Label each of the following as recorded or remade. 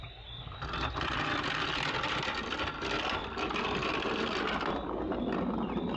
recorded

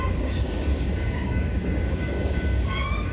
remade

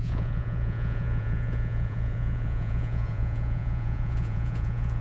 remade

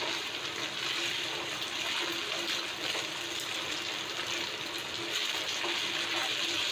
recorded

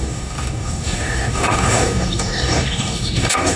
remade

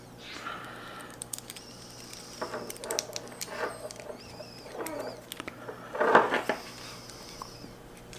recorded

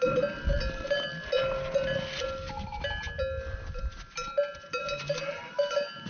recorded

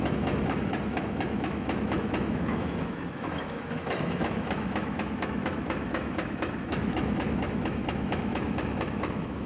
remade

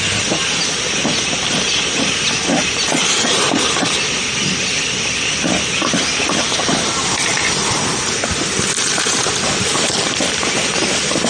recorded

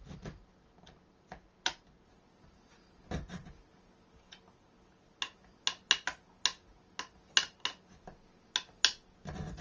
recorded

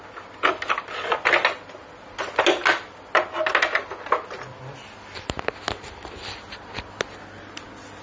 recorded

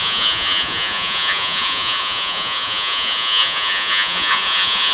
remade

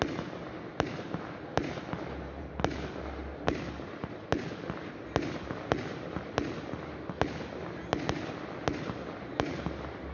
recorded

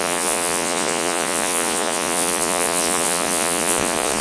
remade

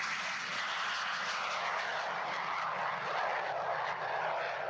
recorded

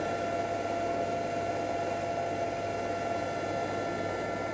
recorded